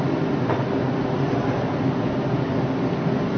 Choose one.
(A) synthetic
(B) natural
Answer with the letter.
B